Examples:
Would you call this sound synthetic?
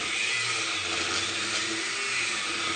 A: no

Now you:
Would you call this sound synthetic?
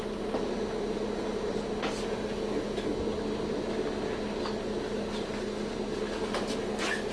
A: no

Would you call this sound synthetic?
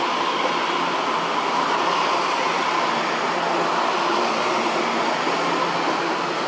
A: no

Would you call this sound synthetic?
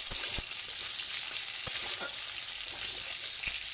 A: no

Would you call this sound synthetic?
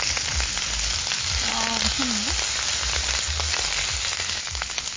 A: no